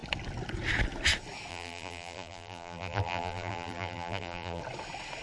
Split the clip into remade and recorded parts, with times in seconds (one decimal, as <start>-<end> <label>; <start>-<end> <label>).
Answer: 0.0-1.5 recorded; 1.5-4.6 remade; 4.6-5.2 recorded